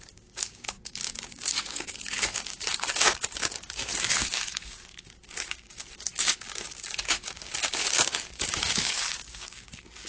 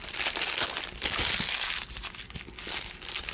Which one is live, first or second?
second